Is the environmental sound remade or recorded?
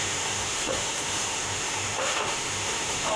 remade